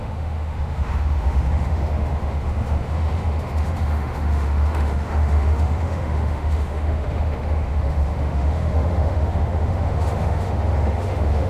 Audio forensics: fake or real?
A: fake